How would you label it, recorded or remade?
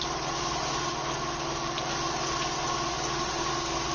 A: recorded